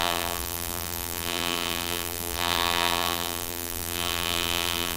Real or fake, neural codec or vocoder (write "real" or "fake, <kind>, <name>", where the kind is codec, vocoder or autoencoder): fake, vocoder, BigVGAN v2